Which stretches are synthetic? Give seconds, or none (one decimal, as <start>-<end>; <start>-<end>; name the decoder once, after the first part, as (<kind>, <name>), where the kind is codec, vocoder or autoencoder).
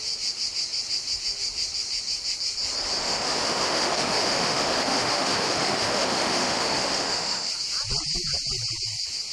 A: 3.0-7.5 (autoencoder, DAC-VAE)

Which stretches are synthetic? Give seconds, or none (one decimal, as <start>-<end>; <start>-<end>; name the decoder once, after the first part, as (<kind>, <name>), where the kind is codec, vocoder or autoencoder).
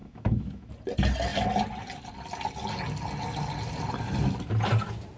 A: 0.0-0.7 (autoencoder, DAC-VAE)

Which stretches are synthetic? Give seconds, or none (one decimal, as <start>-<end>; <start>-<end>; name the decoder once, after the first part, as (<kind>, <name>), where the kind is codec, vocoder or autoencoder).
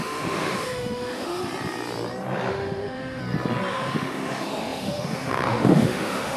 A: 0.0-1.4 (autoencoder, DAC-VAE); 2.5-3.2; 3.7-6.4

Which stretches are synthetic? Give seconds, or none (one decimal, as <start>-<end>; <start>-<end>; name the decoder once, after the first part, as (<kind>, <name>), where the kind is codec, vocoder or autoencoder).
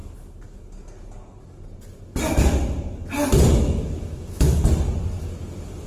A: 3.5-4.6 (autoencoder, DAC-VAE)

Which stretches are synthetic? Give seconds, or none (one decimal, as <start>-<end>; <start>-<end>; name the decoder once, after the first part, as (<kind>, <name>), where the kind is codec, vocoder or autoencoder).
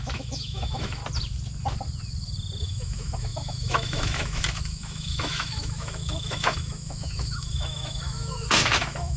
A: 0.0-1.0 (autoencoder, DAC-VAE); 2.6-9.2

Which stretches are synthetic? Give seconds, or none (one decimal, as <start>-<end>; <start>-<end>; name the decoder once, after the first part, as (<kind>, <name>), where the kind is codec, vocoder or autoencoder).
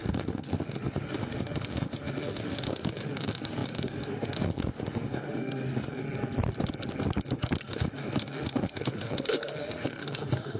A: 0.0-6.0 (autoencoder, DAC-VAE); 7.7-10.6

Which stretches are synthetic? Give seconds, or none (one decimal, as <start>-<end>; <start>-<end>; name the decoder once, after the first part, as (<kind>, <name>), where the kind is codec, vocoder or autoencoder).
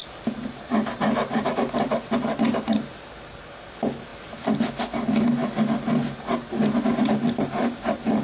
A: none